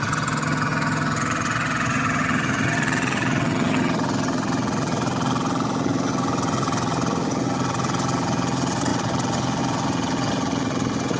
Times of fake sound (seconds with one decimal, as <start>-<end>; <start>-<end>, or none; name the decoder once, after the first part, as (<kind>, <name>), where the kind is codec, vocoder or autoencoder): 0.0-11.2 (vocoder, HiFi-GAN)